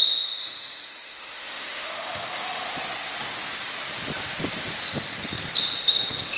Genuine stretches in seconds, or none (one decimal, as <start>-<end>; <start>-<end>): 2.6-5.8